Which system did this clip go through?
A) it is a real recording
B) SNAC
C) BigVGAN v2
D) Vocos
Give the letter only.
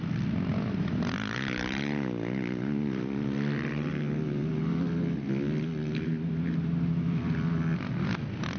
A